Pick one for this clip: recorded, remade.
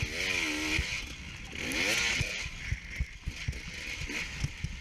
recorded